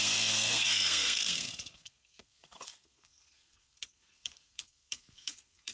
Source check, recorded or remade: remade